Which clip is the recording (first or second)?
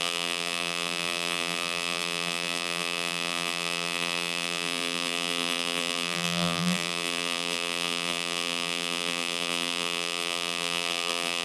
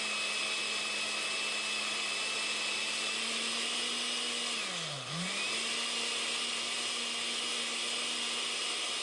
second